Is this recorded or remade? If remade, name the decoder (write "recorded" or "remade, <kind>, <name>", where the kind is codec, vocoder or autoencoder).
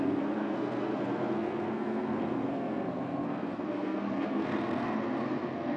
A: remade, codec, SNAC